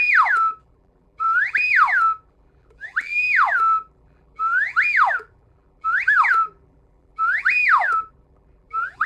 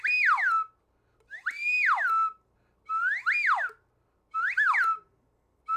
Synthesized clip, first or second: first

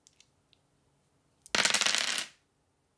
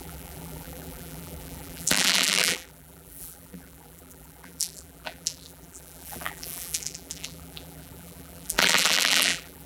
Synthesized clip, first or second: second